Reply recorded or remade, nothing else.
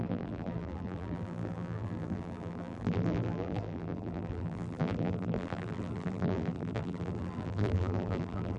remade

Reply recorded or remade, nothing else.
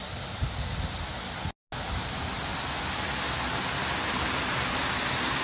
recorded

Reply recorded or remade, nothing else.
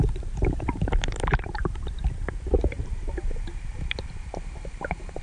remade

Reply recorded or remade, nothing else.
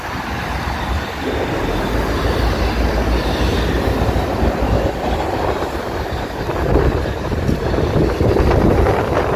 recorded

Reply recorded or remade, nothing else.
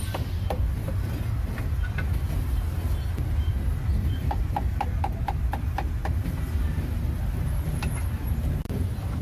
recorded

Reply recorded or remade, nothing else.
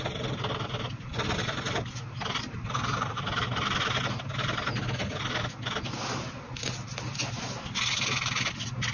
recorded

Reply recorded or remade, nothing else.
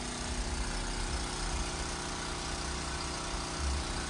recorded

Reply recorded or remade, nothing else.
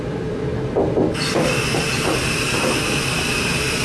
remade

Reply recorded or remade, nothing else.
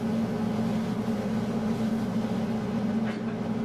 recorded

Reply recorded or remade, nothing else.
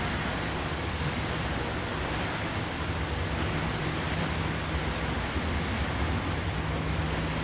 recorded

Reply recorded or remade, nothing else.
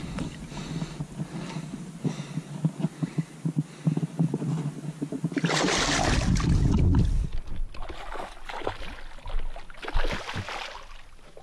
recorded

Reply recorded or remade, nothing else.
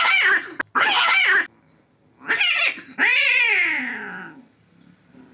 recorded